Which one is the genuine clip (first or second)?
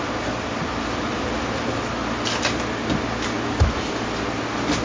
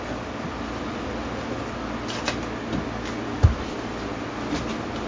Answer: second